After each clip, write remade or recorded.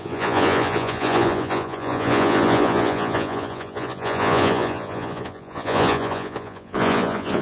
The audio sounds remade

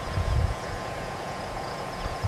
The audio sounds remade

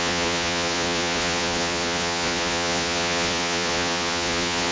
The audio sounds remade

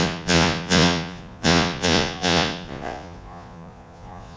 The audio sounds remade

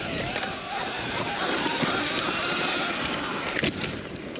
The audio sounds recorded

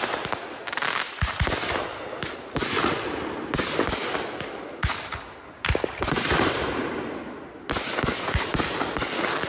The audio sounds recorded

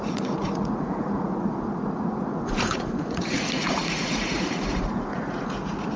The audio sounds remade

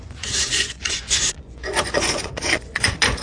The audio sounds remade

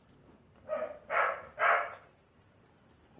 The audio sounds recorded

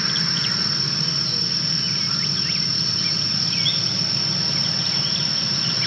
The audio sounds recorded